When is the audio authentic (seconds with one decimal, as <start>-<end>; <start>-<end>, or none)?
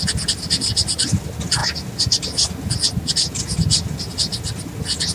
0.0-5.1